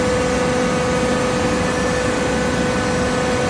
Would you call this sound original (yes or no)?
yes